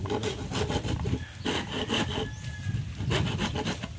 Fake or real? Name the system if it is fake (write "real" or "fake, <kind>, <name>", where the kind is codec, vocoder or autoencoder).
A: real